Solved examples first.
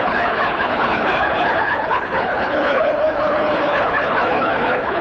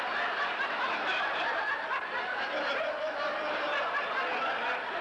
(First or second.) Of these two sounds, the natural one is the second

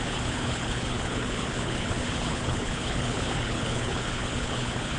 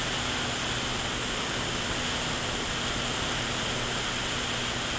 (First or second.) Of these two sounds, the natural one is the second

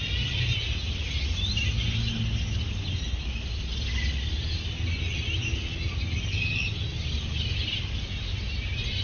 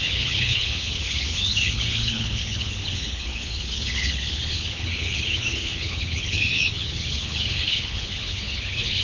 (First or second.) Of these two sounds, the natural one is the first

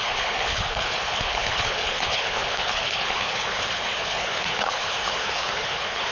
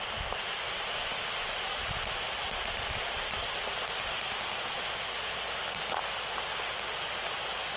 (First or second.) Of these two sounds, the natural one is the second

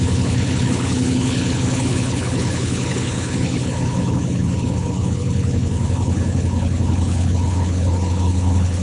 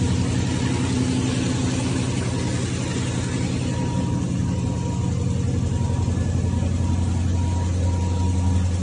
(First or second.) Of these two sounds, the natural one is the second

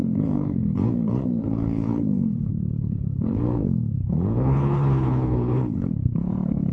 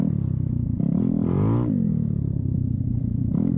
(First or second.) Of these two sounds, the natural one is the second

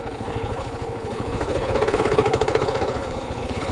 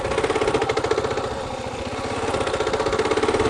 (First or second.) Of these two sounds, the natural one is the second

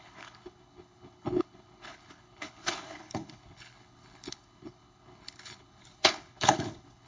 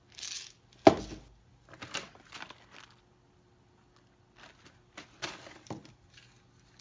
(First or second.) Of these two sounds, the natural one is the second